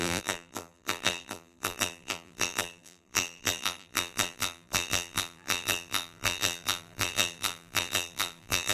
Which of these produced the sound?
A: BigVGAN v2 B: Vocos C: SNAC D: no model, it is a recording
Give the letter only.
A